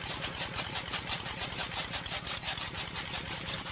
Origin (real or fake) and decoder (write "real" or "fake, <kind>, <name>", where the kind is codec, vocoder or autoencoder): real